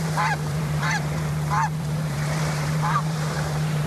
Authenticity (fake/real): fake